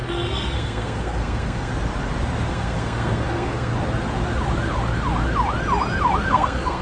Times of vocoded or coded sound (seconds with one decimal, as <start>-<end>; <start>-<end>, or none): 0.0-1.7; 2.5-3.7; 6.3-6.8